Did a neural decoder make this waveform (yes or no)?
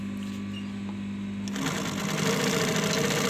no